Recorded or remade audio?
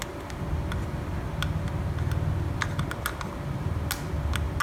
recorded